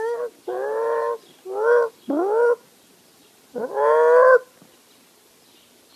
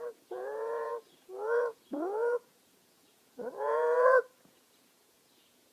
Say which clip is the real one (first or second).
first